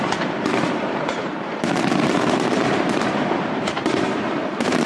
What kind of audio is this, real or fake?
fake